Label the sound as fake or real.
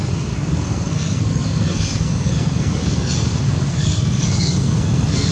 fake